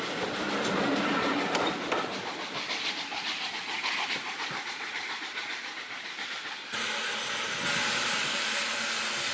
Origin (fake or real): real